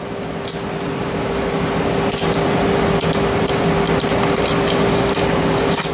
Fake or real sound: real